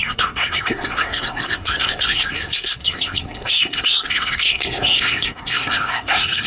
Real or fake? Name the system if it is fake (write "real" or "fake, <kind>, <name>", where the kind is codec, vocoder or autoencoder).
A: fake, codec, SNAC